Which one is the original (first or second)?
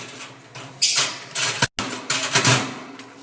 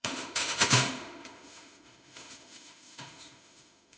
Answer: first